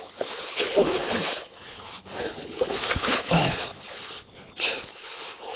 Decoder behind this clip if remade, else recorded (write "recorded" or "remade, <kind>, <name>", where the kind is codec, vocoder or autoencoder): remade, codec, HILCodec